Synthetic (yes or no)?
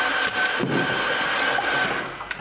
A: no